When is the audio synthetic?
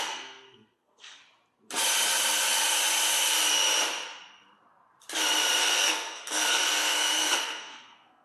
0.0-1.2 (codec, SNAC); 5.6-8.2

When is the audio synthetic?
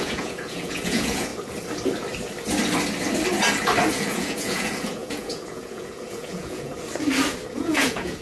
0.0-1.3 (vocoder, Vocos); 3.9-6.7; 7.5-8.2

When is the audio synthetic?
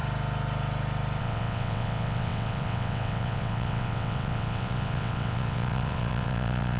1.2-6.8 (vocoder, WaveNeXt)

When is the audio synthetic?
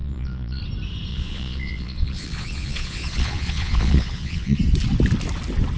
0.0-0.6 (vocoder, Vocos); 1.1-4.6